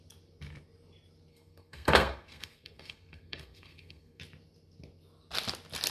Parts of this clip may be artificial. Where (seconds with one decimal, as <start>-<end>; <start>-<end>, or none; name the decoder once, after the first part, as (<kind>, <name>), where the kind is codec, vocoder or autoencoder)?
1.3-4.2 (codec, SNAC)